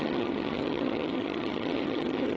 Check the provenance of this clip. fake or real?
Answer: fake